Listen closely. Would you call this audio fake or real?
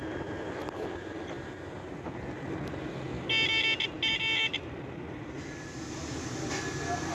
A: real